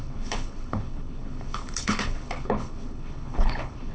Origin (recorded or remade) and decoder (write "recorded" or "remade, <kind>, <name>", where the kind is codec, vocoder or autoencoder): remade, codec, HILCodec